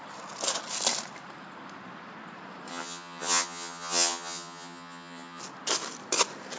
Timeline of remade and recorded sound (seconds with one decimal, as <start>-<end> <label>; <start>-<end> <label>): 0.0-2.7 recorded; 2.7-5.4 remade; 5.4-6.6 recorded